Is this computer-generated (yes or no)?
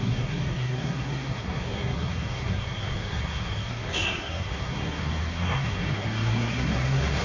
yes